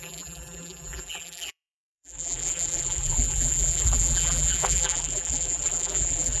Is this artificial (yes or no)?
yes